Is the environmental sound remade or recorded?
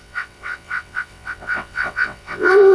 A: remade